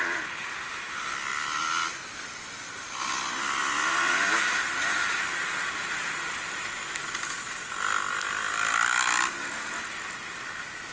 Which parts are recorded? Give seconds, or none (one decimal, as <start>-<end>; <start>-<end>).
0.0-10.9